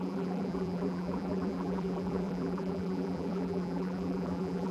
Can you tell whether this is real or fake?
fake